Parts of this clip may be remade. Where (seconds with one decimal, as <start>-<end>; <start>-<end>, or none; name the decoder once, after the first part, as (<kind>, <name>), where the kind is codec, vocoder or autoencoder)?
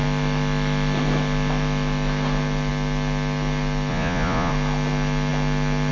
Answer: 3.9-4.5 (vocoder, Vocos)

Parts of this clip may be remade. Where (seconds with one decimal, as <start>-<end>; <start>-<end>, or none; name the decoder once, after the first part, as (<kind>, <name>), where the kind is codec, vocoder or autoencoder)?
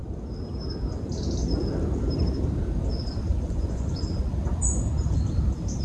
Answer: 3.3-4.0 (vocoder, Vocos)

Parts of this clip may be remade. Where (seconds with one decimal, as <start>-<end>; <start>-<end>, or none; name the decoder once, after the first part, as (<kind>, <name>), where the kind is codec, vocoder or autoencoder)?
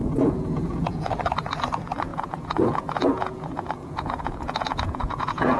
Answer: 0.0-1.1 (vocoder, Vocos); 2.1-5.6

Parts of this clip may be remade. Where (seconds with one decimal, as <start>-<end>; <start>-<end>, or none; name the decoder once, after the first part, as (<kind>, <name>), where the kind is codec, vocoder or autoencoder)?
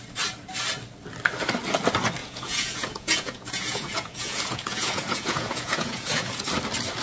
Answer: 2.2-6.4 (vocoder, Vocos)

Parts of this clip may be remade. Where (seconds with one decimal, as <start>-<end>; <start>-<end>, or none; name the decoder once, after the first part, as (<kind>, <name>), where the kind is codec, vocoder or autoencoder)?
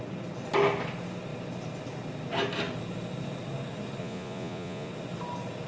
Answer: 4.0-4.9 (vocoder, Vocos)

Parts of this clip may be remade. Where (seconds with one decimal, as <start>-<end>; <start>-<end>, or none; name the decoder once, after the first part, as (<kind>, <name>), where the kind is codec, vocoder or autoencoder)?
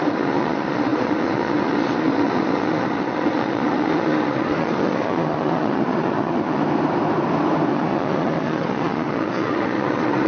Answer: 0.0-6.6 (vocoder, Vocos); 7.7-10.3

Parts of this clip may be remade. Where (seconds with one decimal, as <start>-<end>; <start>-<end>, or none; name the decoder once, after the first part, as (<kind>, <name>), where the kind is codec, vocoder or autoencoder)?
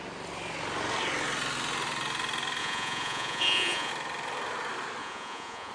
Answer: 2.6-3.9 (vocoder, Vocos); 5.0-5.7